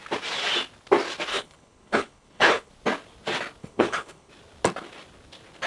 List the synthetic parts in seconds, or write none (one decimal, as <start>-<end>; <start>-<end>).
1.3-2.7; 3.6-4.3